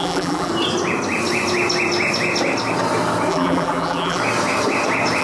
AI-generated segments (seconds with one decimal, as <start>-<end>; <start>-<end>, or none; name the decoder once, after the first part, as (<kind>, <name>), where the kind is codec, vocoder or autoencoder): 0.0-0.5 (vocoder, BigVGAN v2); 3.3-4.2